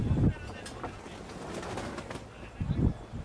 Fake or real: real